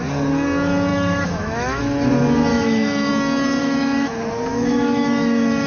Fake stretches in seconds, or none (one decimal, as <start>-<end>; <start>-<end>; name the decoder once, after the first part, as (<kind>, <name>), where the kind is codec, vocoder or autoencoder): 0.9-1.8 (autoencoder, DAC-VAE); 2.5-3.1; 3.6-4.1; 4.5-5.7